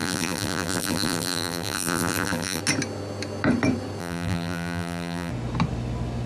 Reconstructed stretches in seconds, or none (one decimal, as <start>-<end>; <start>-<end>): 0.0-2.6; 4.0-5.3